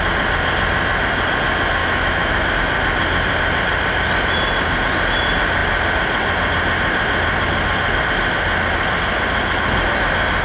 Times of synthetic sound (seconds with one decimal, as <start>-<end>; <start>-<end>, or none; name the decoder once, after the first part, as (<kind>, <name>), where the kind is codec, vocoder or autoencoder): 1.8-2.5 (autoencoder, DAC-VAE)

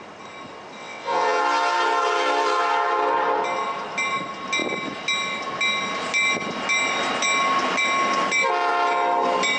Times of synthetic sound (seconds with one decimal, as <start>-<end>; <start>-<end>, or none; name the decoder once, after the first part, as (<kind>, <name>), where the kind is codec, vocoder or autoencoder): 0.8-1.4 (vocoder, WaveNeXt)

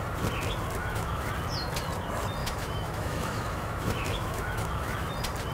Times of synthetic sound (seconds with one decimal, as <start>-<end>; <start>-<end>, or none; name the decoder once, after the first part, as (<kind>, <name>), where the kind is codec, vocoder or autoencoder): 0.8-1.3 (autoencoder, DAC-VAE); 2.4-5.1

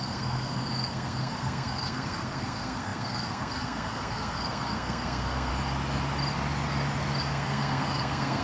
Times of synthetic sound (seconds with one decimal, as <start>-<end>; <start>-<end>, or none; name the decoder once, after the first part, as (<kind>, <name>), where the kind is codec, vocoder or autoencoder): 0.0-5.5 (codec, SNAC); 7.2-8.4

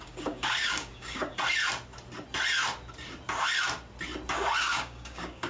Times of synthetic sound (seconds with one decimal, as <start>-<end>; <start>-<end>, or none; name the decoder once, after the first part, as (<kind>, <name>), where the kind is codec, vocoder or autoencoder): 0.0-1.3 (codec, DAC); 4.6-5.5

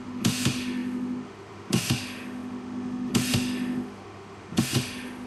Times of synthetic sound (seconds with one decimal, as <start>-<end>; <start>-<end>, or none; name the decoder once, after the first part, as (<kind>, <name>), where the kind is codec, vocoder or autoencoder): 0.0-5.3 (autoencoder, DAC-VAE)

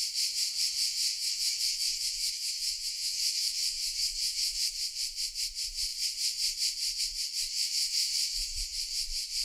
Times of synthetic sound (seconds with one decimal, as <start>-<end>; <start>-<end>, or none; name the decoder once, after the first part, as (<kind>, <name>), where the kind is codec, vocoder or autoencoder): 1.1-4.7 (autoencoder, DAC-VAE); 7.5-8.6

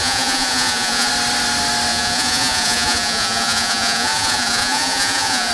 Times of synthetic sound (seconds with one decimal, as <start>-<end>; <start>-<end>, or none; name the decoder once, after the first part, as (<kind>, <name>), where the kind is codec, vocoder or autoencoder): 0.0-1.1 (vocoder, Vocos); 1.9-5.5